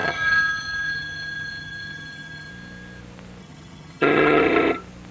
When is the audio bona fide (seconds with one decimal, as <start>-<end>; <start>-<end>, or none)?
2.5-3.4; 4.4-5.1